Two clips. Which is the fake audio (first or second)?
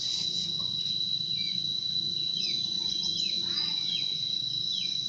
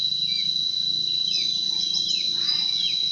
first